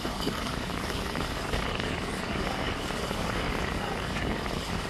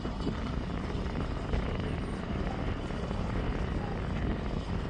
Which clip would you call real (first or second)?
second